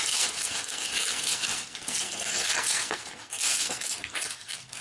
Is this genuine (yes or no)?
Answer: no